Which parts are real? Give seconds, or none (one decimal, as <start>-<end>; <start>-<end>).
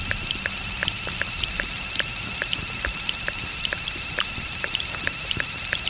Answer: 0.0-5.9